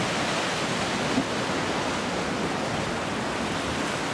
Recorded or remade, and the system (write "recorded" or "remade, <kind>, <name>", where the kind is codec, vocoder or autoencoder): recorded